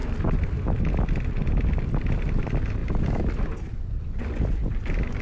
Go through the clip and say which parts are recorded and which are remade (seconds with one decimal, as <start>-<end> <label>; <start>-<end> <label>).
0.0-5.2 recorded